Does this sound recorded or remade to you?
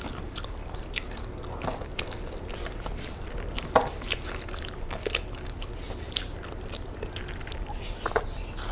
recorded